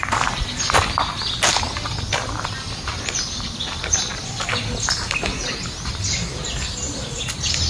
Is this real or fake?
real